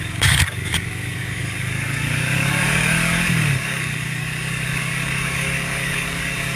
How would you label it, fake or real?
fake